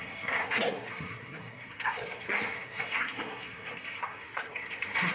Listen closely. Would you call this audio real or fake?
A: fake